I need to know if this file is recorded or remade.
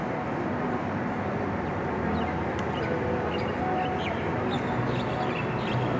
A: recorded